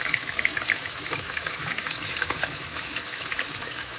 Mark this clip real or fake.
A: fake